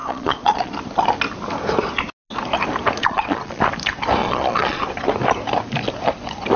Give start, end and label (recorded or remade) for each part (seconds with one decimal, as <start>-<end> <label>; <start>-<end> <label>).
0.0-0.7 remade; 0.7-3.0 recorded; 3.0-3.6 remade; 3.6-4.2 recorded; 4.2-4.8 remade; 4.8-6.6 recorded